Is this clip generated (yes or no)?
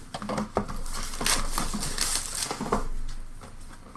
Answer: no